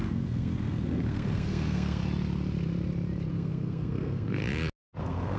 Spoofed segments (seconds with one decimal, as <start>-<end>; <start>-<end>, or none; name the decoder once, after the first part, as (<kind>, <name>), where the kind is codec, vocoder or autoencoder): 0.0-2.0 (codec, SNAC); 3.3-4.4; 5.0-5.4